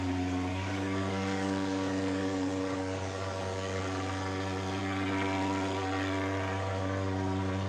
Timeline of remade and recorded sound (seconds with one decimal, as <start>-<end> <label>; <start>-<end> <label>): 0.0-0.5 recorded; 0.5-3.8 remade; 3.8-7.7 recorded